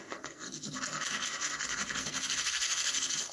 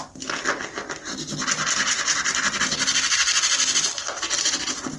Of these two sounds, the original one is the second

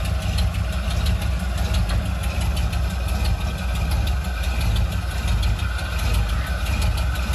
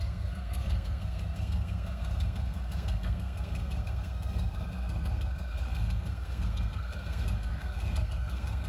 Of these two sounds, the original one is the first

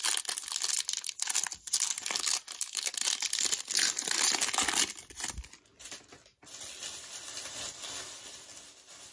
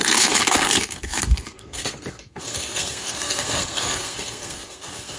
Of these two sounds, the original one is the first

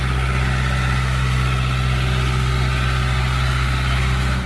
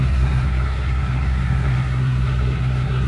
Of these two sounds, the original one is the first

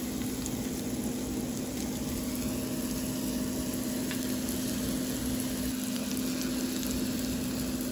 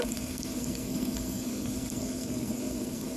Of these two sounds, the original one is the first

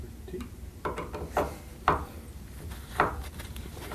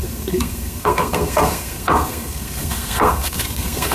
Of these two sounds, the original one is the first